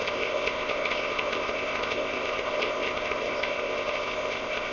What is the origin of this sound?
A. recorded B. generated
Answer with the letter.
B